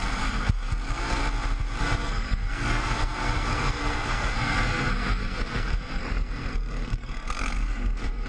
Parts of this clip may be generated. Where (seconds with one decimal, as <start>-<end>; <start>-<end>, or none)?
0.0-1.2; 1.8-8.3